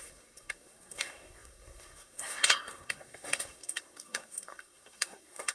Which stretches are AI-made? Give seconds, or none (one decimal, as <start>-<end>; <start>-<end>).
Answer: 0.0-5.5